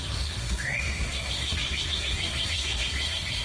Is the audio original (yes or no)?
no